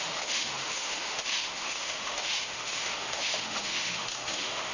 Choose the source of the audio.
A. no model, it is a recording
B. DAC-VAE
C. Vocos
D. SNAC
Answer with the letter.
B